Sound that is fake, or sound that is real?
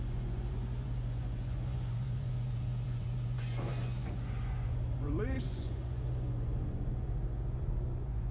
fake